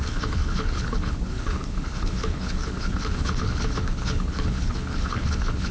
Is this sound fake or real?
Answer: fake